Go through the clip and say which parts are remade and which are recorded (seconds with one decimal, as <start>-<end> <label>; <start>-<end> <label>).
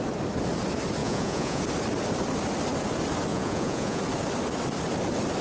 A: 0.0-1.0 recorded; 1.0-1.6 remade; 1.6-3.3 recorded; 3.3-4.0 remade; 4.0-5.4 recorded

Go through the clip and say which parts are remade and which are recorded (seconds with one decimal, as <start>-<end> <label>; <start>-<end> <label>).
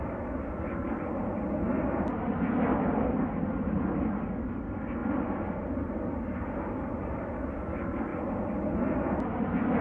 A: 0.0-9.8 recorded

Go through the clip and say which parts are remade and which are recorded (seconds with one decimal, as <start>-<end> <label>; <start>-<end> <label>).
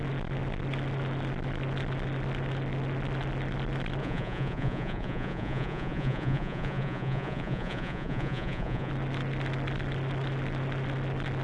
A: 0.0-4.0 recorded; 4.0-8.9 remade; 8.9-11.4 recorded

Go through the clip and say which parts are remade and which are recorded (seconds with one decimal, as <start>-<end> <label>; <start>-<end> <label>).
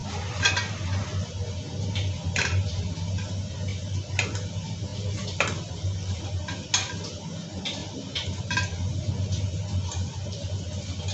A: 0.0-4.9 recorded; 4.9-5.7 remade; 5.7-7.8 recorded; 7.8-8.4 remade; 8.4-11.1 recorded